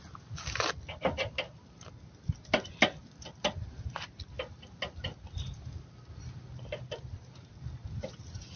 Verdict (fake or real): real